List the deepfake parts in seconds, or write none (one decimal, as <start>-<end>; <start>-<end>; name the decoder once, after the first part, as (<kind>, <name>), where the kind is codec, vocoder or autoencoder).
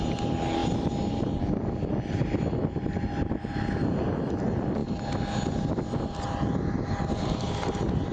none